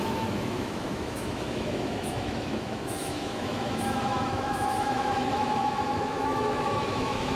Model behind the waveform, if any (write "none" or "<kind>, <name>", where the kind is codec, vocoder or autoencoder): autoencoder, DAC-VAE